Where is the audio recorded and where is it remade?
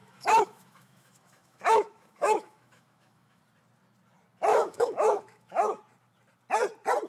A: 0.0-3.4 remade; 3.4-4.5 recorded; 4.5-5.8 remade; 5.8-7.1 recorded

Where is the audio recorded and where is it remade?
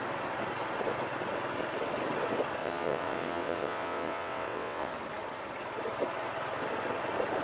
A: 0.0-2.6 recorded; 2.6-4.9 remade; 4.9-7.4 recorded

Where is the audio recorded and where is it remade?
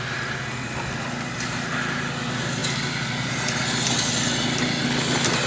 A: 0.0-5.5 recorded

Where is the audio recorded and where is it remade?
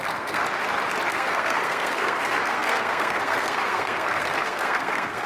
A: 0.0-0.4 remade; 0.4-1.1 recorded; 1.1-5.3 remade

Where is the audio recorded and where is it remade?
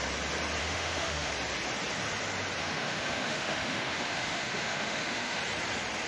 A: 0.0-0.6 recorded; 0.6-1.3 remade; 1.3-2.6 recorded; 2.6-5.4 remade; 5.4-6.1 recorded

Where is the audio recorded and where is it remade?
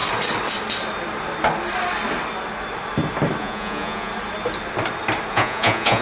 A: 0.0-3.4 recorded; 3.4-4.1 remade; 4.1-5.3 recorded; 5.3-6.0 remade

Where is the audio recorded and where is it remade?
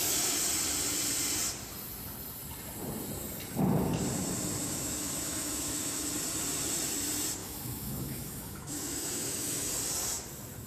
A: 0.0-4.6 recorded; 4.6-6.1 remade; 6.1-7.4 recorded; 7.4-9.7 remade; 9.7-10.7 recorded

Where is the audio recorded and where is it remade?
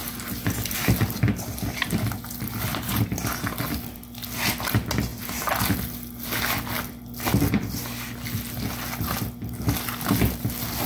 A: 0.0-10.9 recorded